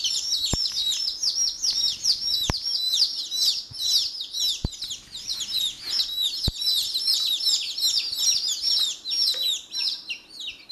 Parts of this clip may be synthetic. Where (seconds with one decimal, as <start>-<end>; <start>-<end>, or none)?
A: none